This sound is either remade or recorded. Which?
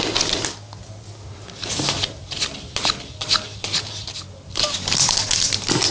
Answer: recorded